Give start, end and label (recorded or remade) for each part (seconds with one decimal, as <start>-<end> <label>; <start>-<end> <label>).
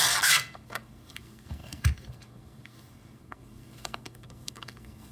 0.0-5.1 remade